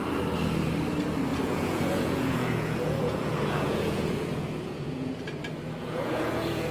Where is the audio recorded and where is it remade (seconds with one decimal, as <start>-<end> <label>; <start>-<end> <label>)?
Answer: 0.0-1.3 recorded; 1.3-5.2 remade; 5.2-5.8 recorded; 5.8-6.7 remade